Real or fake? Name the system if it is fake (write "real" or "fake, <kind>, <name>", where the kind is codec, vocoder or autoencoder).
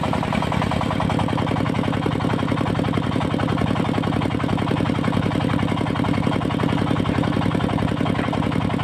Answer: real